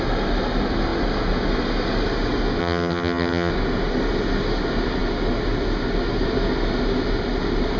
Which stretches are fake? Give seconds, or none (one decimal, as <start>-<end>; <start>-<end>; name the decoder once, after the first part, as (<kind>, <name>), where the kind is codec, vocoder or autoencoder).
2.6-3.5 (vocoder, HiFi-GAN)